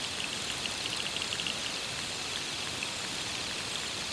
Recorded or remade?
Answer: recorded